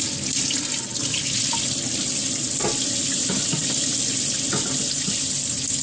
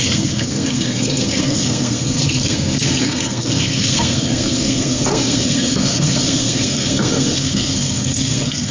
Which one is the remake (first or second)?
second